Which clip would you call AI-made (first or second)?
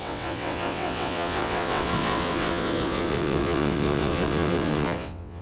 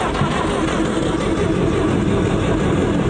first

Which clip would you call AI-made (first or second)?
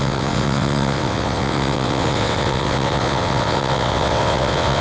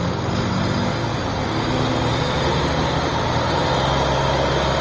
first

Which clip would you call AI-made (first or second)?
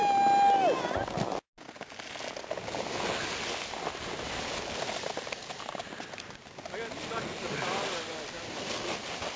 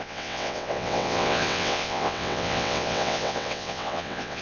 second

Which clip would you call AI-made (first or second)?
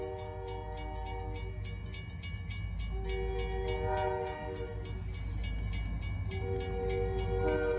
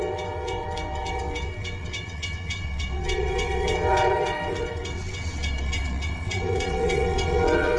second